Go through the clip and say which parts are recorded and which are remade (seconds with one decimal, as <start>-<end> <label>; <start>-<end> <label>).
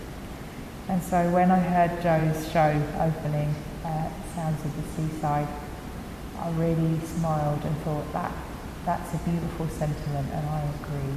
0.0-11.2 recorded